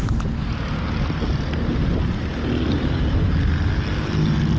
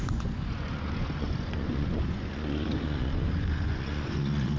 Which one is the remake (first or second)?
second